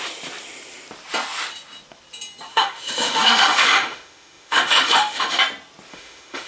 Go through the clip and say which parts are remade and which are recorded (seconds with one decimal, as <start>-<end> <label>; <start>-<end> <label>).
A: 0.0-2.5 recorded; 2.5-5.4 remade; 5.4-5.9 recorded; 5.9-6.5 remade